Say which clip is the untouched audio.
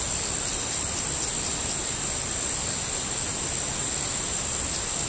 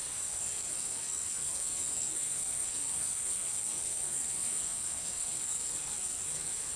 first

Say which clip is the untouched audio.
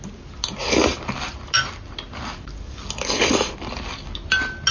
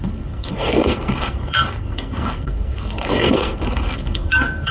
first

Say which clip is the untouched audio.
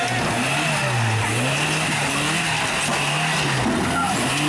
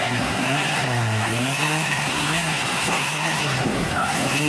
first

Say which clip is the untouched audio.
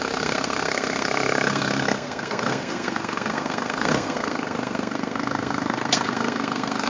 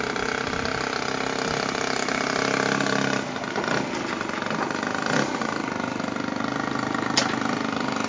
second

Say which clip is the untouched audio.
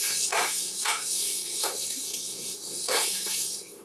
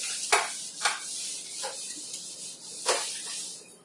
second